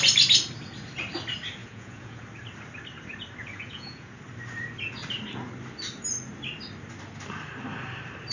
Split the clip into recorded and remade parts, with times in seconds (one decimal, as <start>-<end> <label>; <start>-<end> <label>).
0.0-1.6 recorded; 1.6-2.2 remade; 2.2-3.4 recorded; 3.4-4.2 remade; 4.2-8.3 recorded

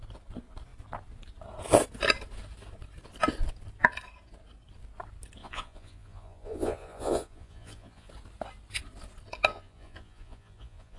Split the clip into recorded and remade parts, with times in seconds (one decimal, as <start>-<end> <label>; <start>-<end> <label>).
0.0-5.4 recorded; 5.4-8.1 remade; 8.1-9.5 recorded; 9.5-11.0 remade

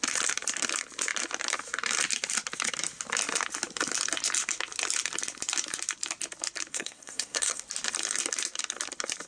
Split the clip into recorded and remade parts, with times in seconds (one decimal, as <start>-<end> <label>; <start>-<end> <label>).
0.0-6.7 recorded; 6.7-7.6 remade; 7.6-9.3 recorded